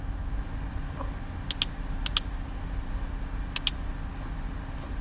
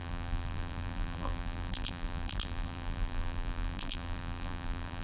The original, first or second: first